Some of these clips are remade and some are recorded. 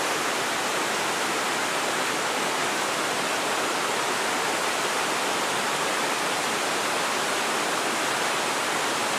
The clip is recorded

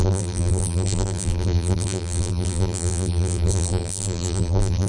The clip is remade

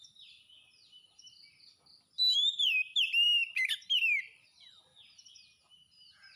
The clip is remade